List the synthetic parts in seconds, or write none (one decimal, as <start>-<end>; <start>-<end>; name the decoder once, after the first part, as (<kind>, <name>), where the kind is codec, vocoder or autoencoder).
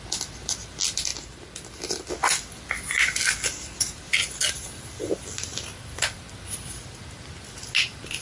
none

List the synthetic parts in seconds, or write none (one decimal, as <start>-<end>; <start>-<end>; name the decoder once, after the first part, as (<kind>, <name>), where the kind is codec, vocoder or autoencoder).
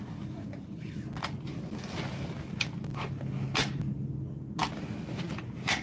none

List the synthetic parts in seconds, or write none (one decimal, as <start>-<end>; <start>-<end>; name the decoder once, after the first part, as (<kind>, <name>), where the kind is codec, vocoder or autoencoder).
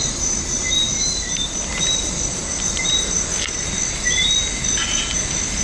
0.9-3.2 (vocoder, BigVGAN v2)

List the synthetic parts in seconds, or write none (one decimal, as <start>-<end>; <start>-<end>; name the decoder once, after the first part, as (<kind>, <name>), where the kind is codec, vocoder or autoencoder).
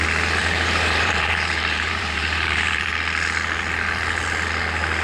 0.4-2.9 (vocoder, BigVGAN v2)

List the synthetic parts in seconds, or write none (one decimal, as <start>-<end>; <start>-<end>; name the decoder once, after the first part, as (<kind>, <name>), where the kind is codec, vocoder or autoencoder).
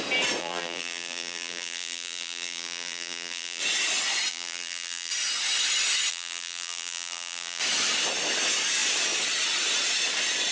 0.4-3.6 (vocoder, BigVGAN v2); 4.3-5.1; 6.1-7.6